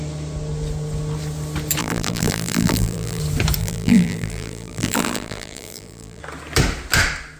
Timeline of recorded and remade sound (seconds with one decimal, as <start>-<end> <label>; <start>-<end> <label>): 0.0-1.8 recorded; 1.8-3.2 remade; 3.2-3.6 recorded; 3.6-6.2 remade; 6.2-7.4 recorded